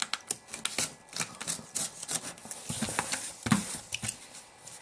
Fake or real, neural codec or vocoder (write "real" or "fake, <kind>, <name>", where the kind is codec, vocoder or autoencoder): real